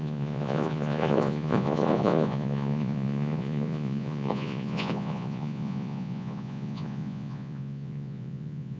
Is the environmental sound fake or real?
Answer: fake